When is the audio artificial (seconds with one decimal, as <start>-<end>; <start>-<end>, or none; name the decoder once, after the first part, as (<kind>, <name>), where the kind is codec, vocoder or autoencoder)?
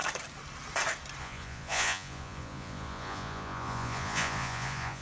1.2-5.0 (vocoder, Vocos)